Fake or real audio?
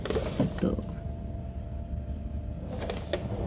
real